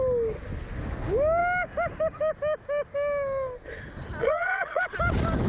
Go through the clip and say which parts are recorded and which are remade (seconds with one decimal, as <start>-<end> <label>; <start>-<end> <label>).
0.0-4.2 recorded; 4.2-4.8 remade; 4.8-5.5 recorded